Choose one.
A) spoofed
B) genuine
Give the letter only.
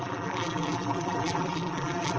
A